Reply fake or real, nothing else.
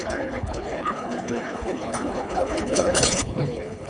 fake